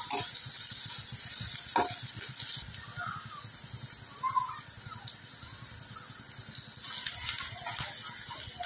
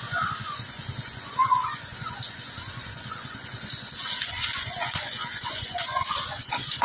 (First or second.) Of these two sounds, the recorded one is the first